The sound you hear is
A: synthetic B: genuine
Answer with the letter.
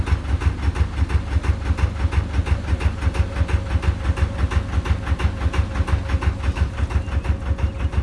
B